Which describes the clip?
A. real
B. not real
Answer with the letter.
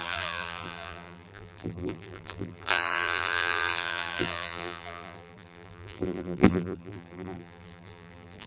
B